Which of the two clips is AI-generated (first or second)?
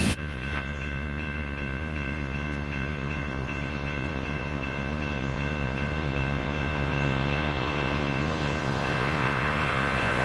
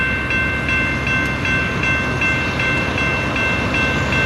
first